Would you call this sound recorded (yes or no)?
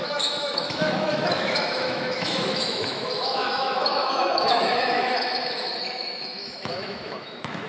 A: no